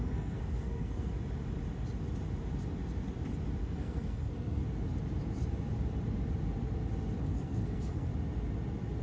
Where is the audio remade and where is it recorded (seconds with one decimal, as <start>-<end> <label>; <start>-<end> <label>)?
0.0-1.1 remade; 1.1-3.6 recorded; 3.6-4.6 remade; 4.6-7.2 recorded; 7.2-8.1 remade; 8.1-9.0 recorded

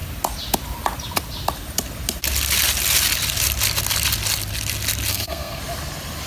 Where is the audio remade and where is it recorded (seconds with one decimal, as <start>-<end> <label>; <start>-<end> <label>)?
0.0-5.1 recorded; 5.1-5.6 remade; 5.6-6.3 recorded